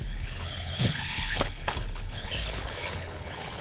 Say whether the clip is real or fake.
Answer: fake